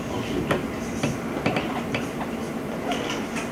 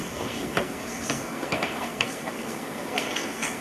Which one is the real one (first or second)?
first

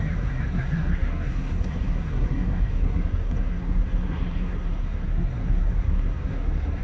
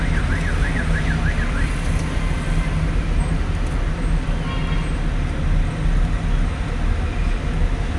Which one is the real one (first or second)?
second